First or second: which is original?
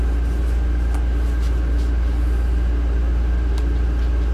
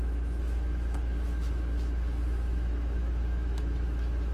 first